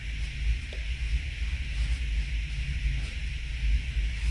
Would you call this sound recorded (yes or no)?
yes